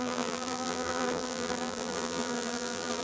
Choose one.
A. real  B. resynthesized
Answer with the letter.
B